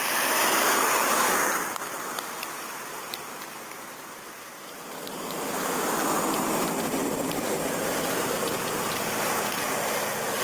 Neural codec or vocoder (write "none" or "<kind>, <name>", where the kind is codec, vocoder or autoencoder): vocoder, BigVGAN v2